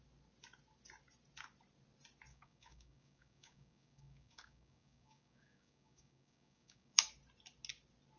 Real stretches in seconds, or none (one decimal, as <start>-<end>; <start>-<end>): 0.0-2.3; 7.1-8.2